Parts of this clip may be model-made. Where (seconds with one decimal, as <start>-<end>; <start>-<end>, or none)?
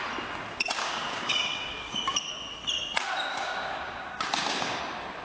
0.8-2.0; 3.3-4.8